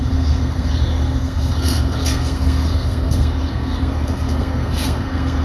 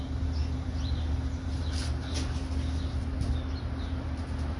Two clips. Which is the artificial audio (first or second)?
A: first